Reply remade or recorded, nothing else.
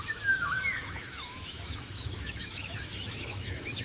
remade